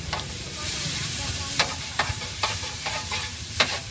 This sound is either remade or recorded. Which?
remade